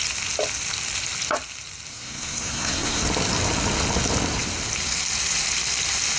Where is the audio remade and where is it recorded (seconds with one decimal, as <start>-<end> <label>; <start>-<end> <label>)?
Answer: 0.0-1.9 recorded; 1.9-3.0 remade; 3.0-6.2 recorded